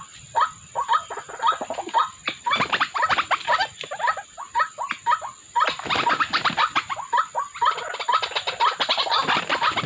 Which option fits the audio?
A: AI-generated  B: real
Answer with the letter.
B